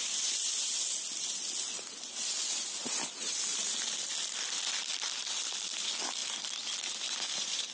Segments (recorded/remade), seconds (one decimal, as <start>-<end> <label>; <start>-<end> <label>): 0.0-7.7 recorded